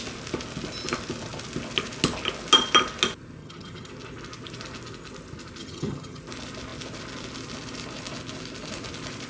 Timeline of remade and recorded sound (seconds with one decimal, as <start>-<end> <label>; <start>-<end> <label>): 0.0-3.4 recorded; 3.4-3.9 remade; 3.9-5.6 recorded; 5.6-6.2 remade; 6.2-9.3 recorded